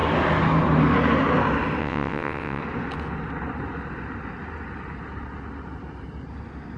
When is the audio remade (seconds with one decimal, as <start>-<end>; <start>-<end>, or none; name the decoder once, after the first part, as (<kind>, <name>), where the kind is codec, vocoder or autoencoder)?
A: 1.8-2.6 (vocoder, WaveNeXt)